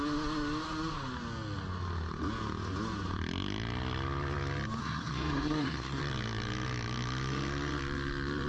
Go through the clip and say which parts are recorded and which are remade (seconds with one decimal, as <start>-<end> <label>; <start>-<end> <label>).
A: 0.0-4.8 recorded; 4.8-6.0 remade; 6.0-8.5 recorded

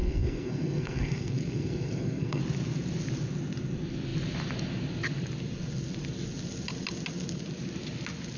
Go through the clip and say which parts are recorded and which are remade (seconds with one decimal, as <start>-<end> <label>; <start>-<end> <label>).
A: 0.0-2.4 remade; 2.4-8.4 recorded

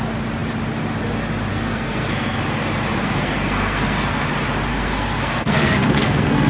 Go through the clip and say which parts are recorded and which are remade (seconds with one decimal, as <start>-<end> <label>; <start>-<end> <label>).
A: 0.0-1.5 recorded; 1.5-2.4 remade; 2.4-2.9 recorded; 2.9-4.2 remade; 4.2-4.7 recorded; 4.7-6.5 remade

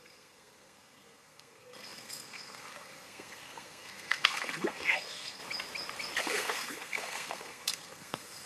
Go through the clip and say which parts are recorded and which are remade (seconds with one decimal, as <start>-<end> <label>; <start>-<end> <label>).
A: 0.0-5.4 remade; 5.4-6.2 recorded; 6.2-8.5 remade

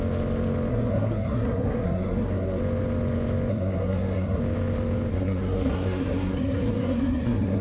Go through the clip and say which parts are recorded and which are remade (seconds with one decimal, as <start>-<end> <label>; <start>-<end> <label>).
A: 0.0-0.7 recorded; 0.7-2.6 remade; 2.6-3.5 recorded; 3.5-4.4 remade; 4.4-5.1 recorded; 5.1-7.6 remade

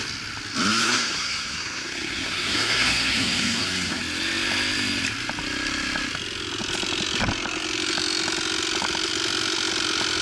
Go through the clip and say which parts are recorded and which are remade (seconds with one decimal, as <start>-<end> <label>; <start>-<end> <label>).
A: 0.0-0.8 recorded; 0.8-4.0 remade; 4.0-10.2 recorded

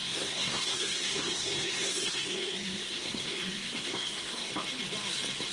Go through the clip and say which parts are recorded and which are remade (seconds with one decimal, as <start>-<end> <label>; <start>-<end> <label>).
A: 0.0-4.5 remade; 4.5-5.5 recorded